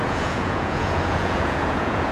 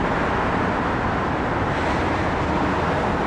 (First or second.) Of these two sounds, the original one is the second